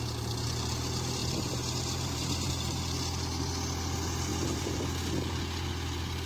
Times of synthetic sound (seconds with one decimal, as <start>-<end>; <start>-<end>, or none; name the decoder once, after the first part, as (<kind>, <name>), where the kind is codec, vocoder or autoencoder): 1.2-2.5 (vocoder, BigVGAN v2); 4.3-4.9